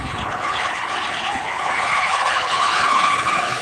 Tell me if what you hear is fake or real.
fake